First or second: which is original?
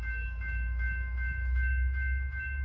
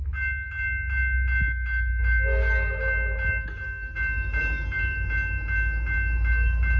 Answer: second